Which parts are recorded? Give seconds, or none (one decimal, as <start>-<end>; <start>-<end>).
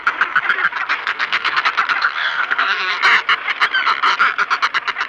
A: 0.0-1.0; 1.6-2.0; 3.0-5.1